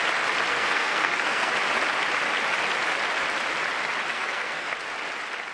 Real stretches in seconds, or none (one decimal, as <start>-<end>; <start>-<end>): 0.0-0.5; 1.5-4.1; 4.7-5.5

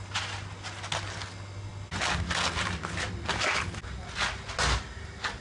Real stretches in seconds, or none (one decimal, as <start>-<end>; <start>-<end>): 0.0-5.4